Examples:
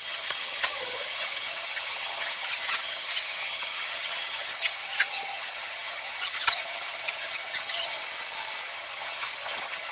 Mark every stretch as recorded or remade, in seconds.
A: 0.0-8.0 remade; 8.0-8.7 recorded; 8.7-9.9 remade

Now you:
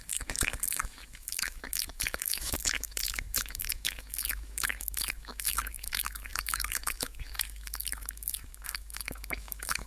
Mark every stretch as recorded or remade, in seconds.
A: 0.0-9.9 remade

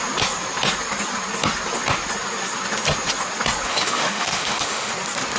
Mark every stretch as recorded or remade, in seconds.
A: 0.0-3.7 recorded; 3.7-4.9 remade; 4.9-5.4 recorded

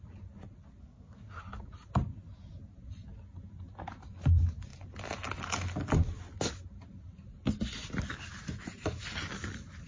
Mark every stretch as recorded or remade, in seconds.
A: 0.0-0.8 recorded; 0.8-1.4 remade; 1.4-9.9 recorded